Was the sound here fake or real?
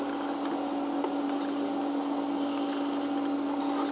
real